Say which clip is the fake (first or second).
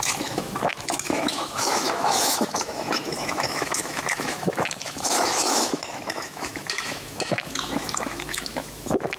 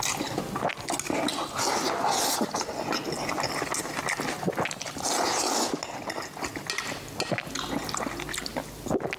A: first